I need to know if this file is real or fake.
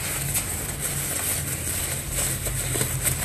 real